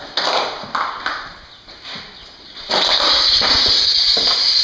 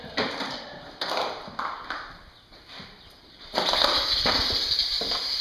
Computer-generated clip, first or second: second